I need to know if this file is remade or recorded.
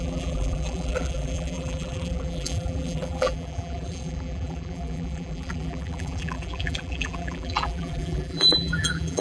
remade